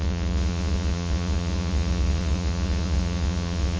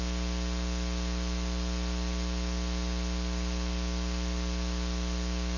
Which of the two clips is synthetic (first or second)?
first